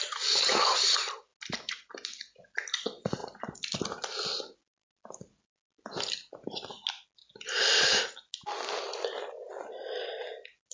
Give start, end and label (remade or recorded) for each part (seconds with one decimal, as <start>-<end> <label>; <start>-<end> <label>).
0.0-10.7 recorded